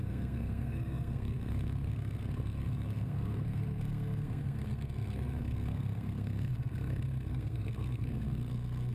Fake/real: fake